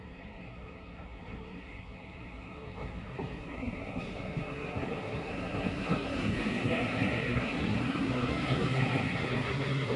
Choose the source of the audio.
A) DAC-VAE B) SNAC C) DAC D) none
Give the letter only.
B